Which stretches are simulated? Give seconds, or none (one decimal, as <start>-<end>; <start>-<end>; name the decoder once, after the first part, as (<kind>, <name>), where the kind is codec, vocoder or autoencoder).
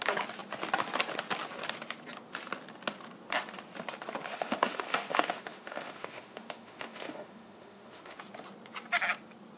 4.3-8.2 (autoencoder, DAC-VAE)